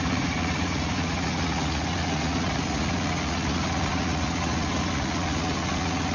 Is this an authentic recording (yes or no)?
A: no